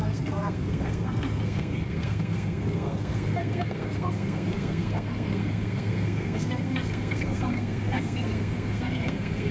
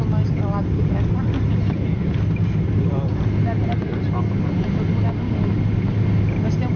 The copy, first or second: first